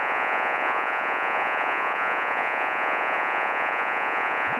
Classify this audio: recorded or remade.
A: remade